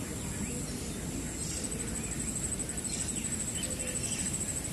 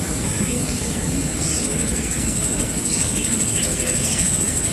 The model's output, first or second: second